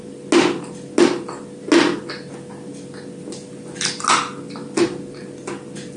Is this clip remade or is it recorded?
recorded